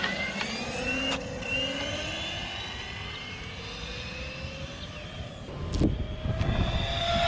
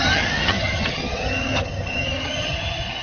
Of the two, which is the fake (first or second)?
second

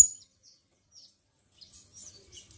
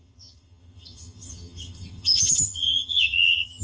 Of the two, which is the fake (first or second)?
second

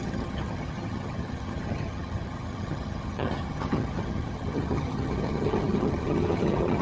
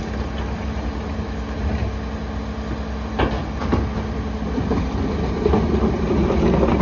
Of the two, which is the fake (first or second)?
first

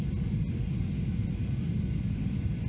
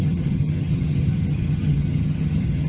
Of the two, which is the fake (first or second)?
second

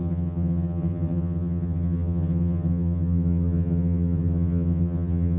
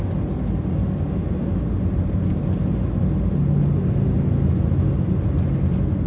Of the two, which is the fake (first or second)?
first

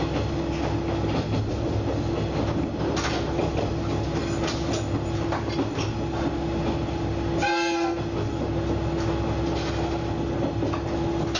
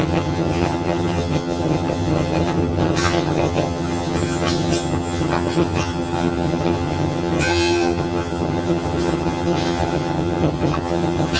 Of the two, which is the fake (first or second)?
second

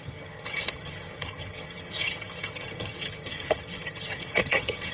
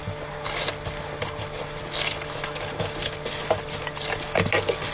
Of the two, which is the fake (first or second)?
first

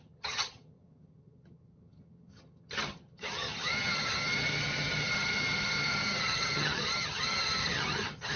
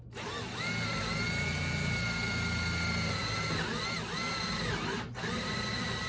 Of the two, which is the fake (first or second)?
first